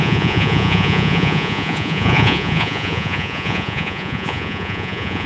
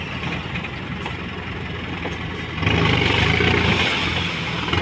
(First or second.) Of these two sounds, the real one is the second